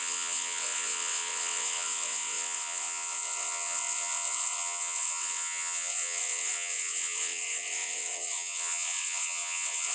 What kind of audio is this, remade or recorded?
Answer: remade